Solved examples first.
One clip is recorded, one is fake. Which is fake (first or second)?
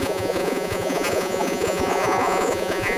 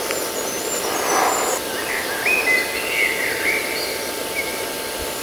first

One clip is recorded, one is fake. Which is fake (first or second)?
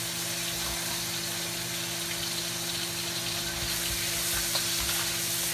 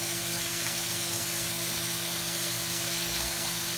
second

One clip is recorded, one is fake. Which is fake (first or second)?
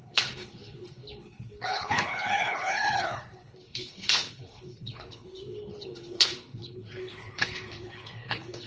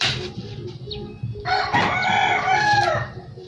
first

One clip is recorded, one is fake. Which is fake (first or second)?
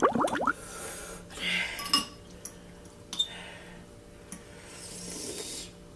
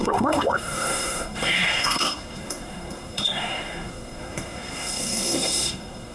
second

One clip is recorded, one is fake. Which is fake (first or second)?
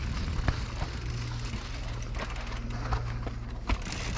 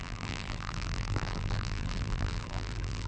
second